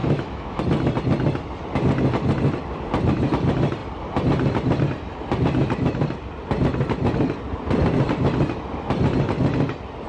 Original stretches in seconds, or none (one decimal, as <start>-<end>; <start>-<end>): 0.6-10.1

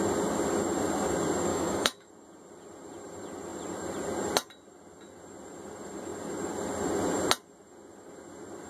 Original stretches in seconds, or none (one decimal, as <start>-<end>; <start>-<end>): 0.0-1.5; 2.1-8.7

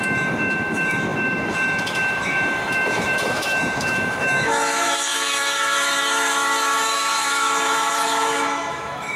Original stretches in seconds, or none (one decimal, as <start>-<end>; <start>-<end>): none

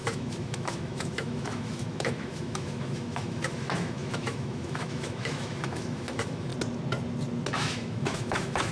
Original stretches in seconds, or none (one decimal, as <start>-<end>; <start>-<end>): 6.5-7.5